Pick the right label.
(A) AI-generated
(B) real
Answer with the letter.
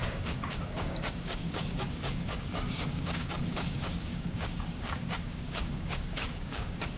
A